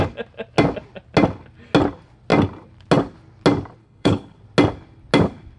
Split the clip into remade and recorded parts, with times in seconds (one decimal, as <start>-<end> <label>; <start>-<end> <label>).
0.0-3.8 recorded; 3.8-4.4 remade; 4.4-5.6 recorded